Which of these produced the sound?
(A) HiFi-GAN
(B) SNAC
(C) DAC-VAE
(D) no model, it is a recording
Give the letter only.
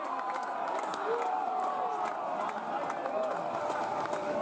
D